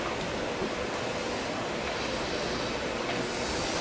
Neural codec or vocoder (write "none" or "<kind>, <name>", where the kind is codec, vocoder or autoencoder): none